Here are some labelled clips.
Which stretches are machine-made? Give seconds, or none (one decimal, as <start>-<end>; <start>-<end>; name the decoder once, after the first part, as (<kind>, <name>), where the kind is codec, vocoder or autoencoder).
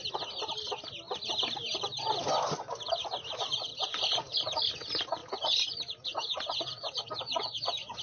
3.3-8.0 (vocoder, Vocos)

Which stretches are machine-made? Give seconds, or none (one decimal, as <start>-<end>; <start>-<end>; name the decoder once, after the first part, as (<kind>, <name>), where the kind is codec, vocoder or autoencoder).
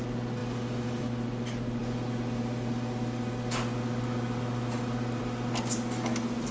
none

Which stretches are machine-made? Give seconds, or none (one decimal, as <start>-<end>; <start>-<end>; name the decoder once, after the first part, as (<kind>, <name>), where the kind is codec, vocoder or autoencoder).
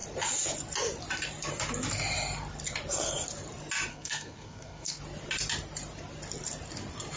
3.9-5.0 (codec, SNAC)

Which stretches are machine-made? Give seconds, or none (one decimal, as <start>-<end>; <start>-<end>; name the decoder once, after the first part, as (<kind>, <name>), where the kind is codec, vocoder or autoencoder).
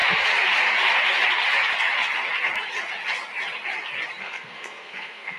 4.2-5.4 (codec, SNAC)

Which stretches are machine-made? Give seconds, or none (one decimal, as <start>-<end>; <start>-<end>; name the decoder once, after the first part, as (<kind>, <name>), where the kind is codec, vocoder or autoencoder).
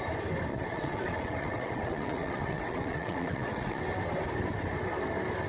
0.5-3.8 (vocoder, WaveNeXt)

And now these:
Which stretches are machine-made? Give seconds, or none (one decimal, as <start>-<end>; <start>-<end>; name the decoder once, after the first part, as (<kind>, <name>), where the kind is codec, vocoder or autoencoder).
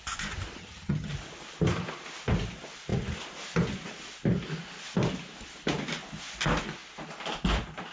0.6-1.1 (vocoder, HiFi-GAN)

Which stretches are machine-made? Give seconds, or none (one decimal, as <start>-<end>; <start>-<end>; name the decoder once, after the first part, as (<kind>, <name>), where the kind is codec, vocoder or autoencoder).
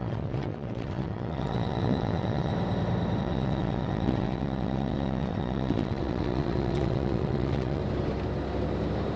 0.0-2.5 (vocoder, WaveNeXt); 3.2-7.8